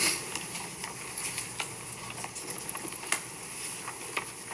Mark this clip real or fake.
real